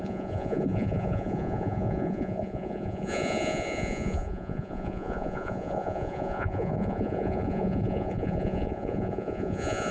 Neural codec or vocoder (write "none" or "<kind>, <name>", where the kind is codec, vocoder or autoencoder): vocoder, Vocos